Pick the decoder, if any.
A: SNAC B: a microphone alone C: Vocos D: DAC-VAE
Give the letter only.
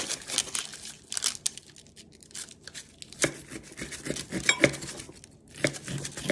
B